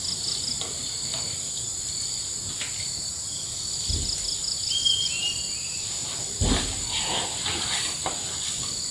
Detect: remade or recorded recorded